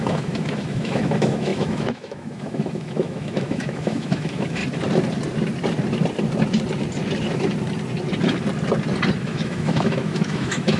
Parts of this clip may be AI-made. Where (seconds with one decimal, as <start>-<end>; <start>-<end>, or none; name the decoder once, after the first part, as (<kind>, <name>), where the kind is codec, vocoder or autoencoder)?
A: 0.0-4.6 (autoencoder, DAC-VAE); 9.2-10.8